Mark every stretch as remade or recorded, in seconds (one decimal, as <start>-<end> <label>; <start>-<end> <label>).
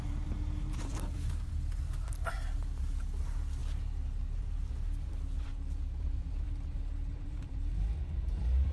0.0-3.6 remade; 3.6-4.4 recorded; 4.4-5.5 remade; 5.5-6.0 recorded; 6.0-8.7 remade